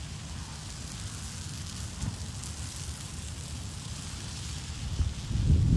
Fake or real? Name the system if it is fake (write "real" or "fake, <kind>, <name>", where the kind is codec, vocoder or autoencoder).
real